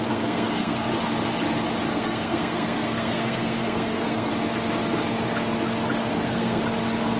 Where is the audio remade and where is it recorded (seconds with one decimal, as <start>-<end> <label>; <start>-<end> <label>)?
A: 0.0-0.9 remade; 0.9-1.9 recorded; 1.9-4.3 remade; 4.3-6.1 recorded; 6.1-6.6 remade; 6.6-7.2 recorded